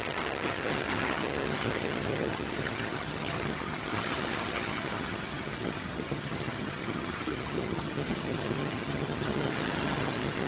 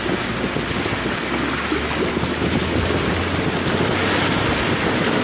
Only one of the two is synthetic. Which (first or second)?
first